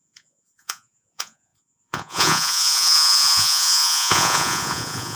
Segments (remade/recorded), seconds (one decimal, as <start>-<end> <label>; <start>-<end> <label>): 0.0-5.2 remade

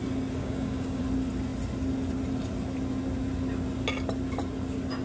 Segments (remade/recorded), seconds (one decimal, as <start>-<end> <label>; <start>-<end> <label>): 0.0-0.4 recorded; 0.4-1.0 remade; 1.0-5.0 recorded